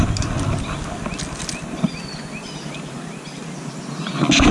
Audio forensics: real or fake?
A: real